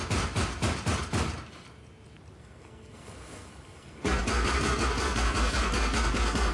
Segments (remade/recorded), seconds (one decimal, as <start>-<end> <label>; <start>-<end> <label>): 0.0-2.4 recorded; 2.4-6.5 remade